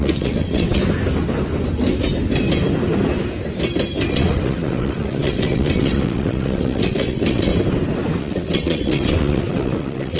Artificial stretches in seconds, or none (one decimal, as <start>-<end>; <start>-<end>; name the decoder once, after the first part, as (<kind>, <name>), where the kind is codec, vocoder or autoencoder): 0.0-0.8 (vocoder, WaveNeXt); 4.1-7.5; 8.2-10.2